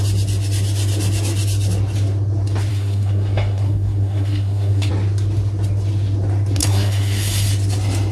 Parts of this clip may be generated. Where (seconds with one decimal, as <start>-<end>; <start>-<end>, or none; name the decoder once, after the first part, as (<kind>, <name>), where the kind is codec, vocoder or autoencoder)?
2.7-4.9 (codec, SNAC); 6.6-7.5